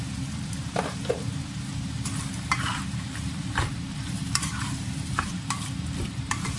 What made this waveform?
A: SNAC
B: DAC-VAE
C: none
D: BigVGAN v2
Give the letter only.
D